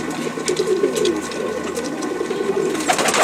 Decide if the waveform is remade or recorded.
recorded